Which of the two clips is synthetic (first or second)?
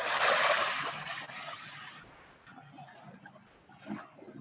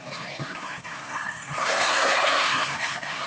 second